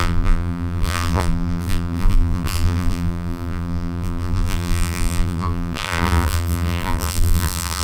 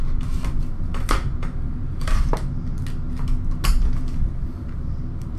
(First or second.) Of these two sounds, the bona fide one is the second